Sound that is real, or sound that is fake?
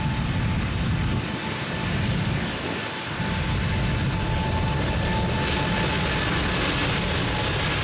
real